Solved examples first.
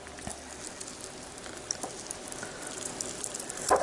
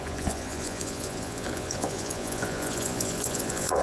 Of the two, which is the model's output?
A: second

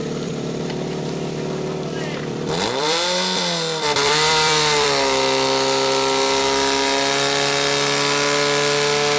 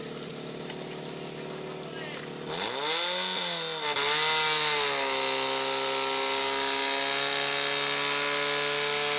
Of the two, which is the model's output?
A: first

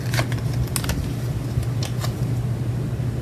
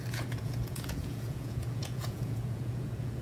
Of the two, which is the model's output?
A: second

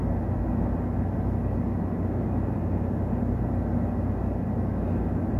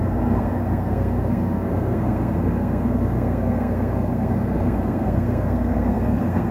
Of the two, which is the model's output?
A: second